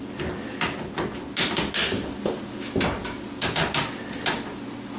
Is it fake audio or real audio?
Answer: real